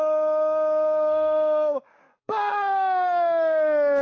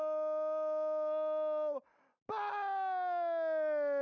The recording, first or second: second